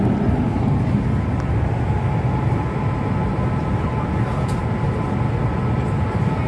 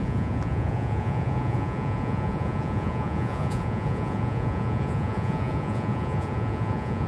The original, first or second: first